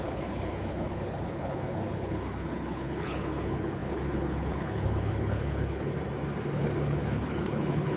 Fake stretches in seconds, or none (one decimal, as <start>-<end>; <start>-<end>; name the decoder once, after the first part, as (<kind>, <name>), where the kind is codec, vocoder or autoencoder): 0.0-5.9 (codec, HILCodec); 6.5-8.0

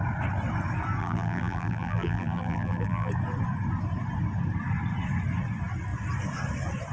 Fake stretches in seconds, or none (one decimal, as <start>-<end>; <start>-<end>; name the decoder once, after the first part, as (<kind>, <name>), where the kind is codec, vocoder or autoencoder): 1.0-3.1 (vocoder, BigVGAN v2)

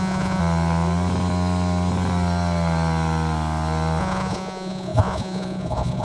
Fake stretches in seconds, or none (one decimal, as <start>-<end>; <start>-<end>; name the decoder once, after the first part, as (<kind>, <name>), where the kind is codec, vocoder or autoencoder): 0.0-0.4 (vocoder, Vocos); 4.0-6.0

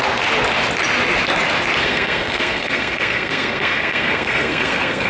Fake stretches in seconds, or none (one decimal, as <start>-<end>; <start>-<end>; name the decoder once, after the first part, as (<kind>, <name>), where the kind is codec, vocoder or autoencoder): 1.8-5.1 (codec, SNAC)